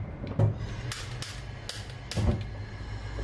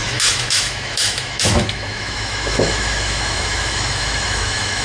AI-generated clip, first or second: second